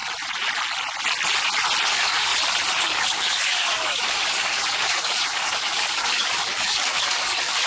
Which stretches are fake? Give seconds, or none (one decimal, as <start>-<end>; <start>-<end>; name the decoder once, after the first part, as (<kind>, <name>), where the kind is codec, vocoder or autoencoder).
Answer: 1.9-2.3 (codec, DAC); 2.8-7.7